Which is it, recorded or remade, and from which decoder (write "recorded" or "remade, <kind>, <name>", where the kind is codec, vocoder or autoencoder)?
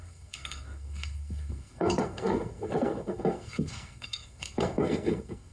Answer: remade, codec, SNAC